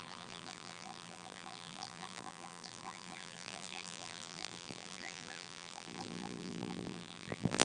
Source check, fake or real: fake